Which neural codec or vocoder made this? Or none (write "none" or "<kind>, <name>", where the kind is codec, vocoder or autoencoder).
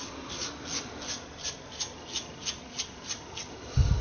none